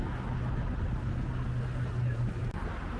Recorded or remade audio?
recorded